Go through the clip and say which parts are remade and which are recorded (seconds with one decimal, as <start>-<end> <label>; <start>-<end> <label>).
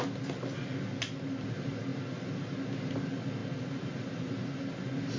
0.0-5.2 recorded